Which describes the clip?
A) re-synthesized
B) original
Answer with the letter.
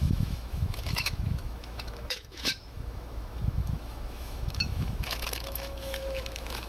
A